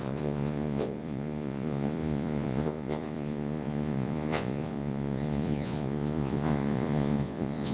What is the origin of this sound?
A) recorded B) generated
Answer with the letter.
B